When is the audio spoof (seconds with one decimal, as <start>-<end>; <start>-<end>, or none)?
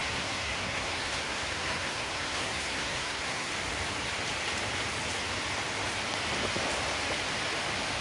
0.0-3.5